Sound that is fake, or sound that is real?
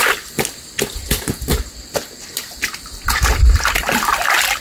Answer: fake